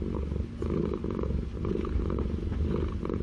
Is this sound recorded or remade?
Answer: recorded